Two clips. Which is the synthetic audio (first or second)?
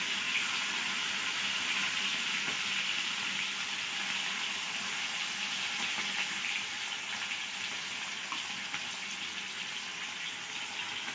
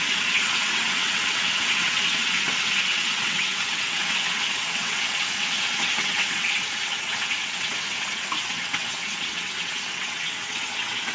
second